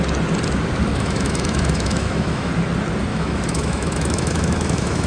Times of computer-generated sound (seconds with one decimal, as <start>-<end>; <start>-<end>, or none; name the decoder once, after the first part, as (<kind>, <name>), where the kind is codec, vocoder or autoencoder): 0.9-2.5 (autoencoder, DAC-VAE); 3.1-5.1